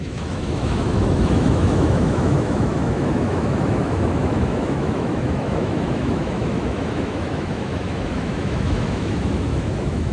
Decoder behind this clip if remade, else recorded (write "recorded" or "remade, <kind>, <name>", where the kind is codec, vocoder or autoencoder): remade, autoencoder, DAC-VAE